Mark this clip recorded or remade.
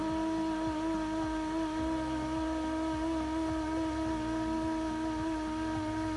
recorded